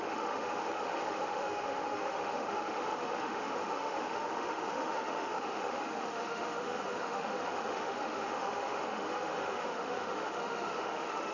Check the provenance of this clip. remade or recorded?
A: remade